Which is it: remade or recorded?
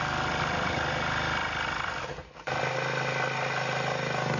recorded